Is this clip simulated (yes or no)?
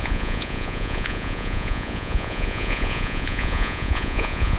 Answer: yes